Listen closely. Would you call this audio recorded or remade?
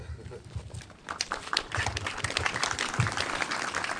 remade